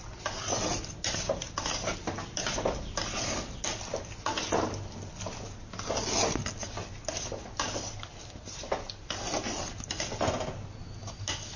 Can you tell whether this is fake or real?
real